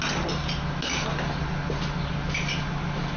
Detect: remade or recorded recorded